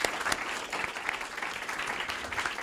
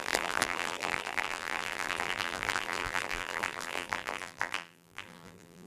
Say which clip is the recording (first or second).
first